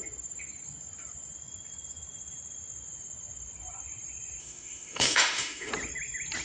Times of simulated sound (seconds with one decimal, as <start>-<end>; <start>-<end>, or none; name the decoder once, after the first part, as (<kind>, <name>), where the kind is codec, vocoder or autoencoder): 4.4-5.7 (autoencoder, DAC-VAE)